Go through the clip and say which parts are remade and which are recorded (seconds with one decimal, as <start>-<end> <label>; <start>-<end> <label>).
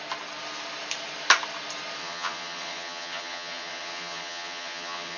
0.0-2.0 recorded; 2.0-5.2 remade